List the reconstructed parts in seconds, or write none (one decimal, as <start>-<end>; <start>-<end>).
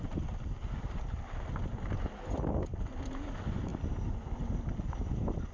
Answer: none